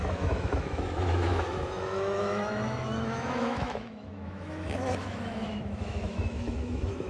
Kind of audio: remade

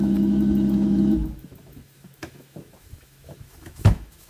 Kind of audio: remade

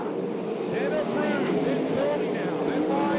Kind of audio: recorded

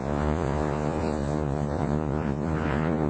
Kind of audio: remade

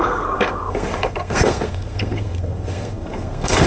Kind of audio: remade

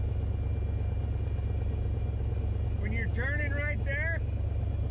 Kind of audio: recorded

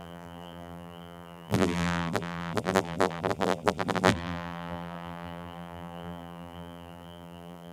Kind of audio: remade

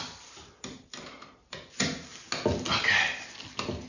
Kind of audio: recorded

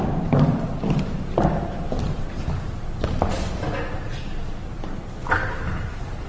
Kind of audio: recorded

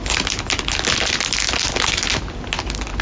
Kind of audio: recorded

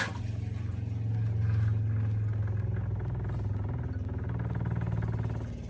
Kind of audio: recorded